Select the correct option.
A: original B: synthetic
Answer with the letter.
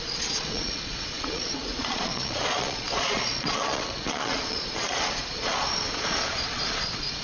B